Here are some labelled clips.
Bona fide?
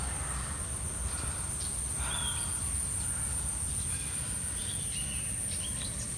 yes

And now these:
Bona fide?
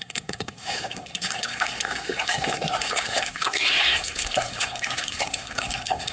no